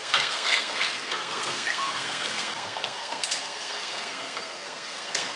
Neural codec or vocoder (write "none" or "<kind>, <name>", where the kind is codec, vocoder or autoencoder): codec, SNAC